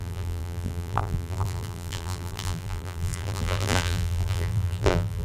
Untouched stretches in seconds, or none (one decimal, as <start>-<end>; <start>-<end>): none